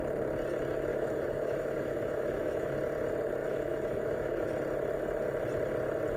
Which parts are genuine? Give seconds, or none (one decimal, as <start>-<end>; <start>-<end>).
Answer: 0.0-0.9; 2.7-3.4; 4.5-6.2